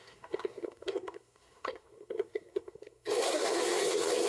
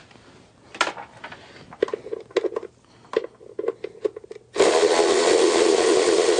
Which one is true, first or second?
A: second